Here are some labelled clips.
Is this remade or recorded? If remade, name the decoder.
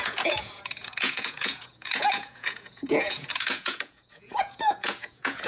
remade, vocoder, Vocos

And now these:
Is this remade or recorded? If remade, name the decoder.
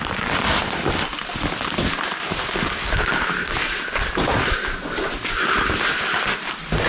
recorded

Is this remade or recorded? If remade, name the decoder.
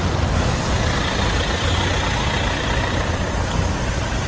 recorded